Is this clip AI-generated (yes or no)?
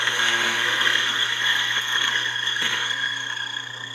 yes